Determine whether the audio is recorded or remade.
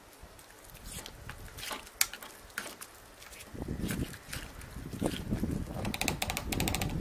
recorded